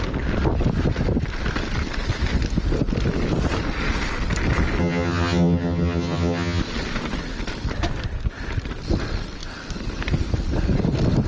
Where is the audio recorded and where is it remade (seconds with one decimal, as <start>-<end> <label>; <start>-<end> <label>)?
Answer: 0.0-4.8 recorded; 4.8-6.6 remade; 6.6-11.3 recorded